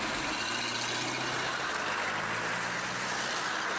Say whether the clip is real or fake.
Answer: real